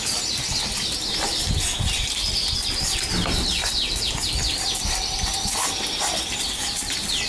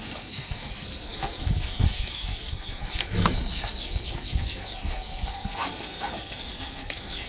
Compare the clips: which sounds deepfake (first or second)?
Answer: second